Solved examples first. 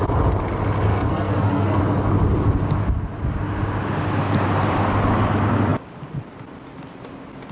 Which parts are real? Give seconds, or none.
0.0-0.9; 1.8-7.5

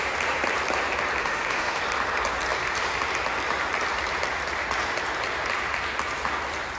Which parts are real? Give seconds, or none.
0.0-1.2; 1.8-6.8

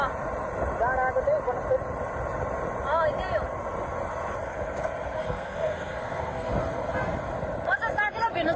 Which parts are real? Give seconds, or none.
0.0-5.2; 6.5-8.6

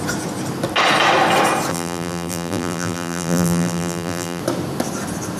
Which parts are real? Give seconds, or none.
0.0-1.7; 4.4-5.4

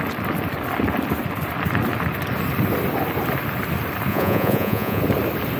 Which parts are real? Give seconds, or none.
0.0-4.1; 5.0-5.6